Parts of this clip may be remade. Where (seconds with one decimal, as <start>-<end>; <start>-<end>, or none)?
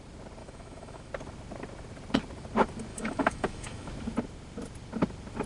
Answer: 0.4-1.1; 2.9-3.9